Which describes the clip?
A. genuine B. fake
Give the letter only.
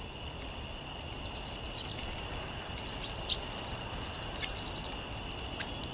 A